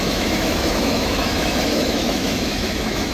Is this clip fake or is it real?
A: fake